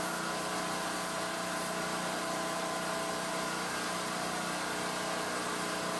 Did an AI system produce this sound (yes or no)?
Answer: no